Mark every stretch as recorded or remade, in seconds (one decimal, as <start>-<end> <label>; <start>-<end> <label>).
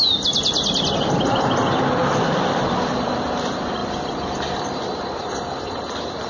0.0-2.0 recorded; 2.0-3.3 remade; 3.3-3.8 recorded; 3.8-5.2 remade; 5.2-6.3 recorded